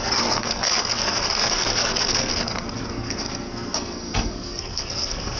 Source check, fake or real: fake